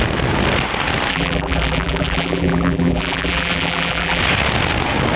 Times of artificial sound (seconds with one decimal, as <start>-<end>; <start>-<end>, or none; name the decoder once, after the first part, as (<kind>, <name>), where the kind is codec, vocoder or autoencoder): 1.1-4.2 (vocoder, BigVGAN v2)